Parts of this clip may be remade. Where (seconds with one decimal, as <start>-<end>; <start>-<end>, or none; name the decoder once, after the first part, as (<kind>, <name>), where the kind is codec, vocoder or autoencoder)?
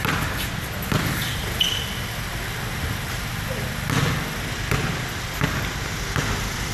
none